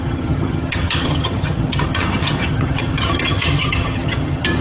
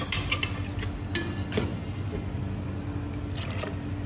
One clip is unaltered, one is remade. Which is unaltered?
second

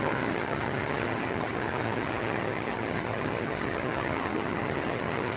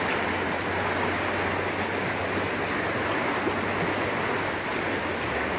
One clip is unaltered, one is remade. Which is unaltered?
second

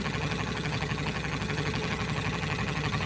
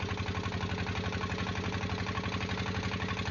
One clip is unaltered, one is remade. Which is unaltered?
second